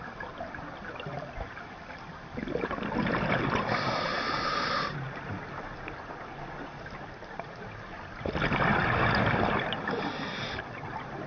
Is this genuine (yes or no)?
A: yes